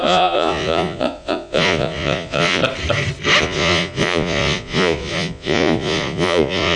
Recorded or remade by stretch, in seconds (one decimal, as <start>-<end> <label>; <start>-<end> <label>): 0.0-2.6 remade; 2.6-3.4 recorded; 3.4-6.8 remade